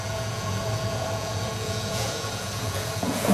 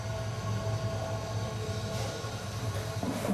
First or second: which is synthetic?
first